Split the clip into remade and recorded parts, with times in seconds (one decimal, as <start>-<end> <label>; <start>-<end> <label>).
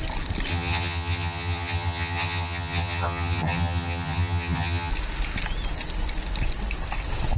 0.0-0.5 recorded; 0.5-4.9 remade; 4.9-7.4 recorded